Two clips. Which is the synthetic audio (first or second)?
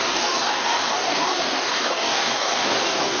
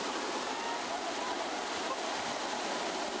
first